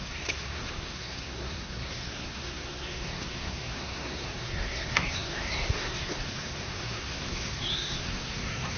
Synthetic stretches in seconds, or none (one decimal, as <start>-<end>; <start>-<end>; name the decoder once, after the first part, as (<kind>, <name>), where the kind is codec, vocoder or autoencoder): 0.0-8.8 (codec, SNAC)